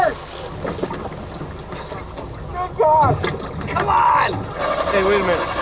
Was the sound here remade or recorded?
recorded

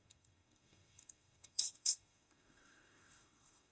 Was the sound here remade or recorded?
remade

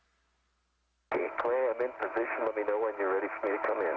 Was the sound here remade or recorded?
recorded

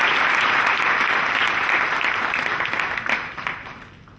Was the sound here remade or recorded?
recorded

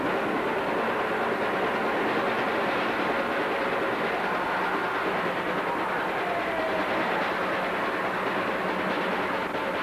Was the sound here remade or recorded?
recorded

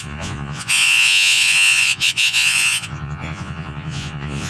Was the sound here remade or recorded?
remade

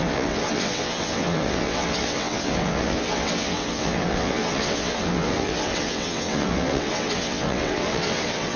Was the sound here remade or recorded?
remade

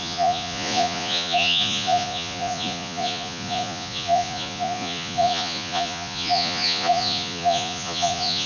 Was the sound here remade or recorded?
remade